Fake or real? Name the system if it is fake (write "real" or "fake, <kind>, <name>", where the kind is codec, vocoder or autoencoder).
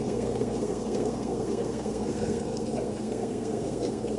fake, codec, SNAC